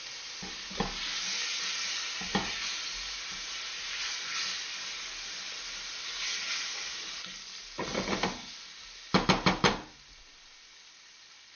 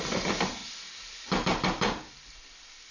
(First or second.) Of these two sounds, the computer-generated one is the second